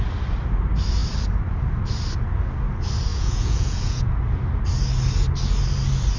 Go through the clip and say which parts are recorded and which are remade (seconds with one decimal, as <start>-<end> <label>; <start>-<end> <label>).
0.0-3.1 recorded; 3.1-4.1 remade; 4.1-6.2 recorded